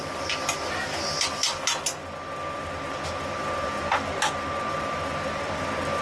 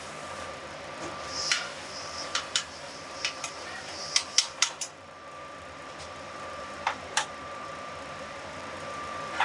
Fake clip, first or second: second